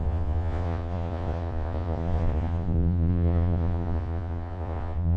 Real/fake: fake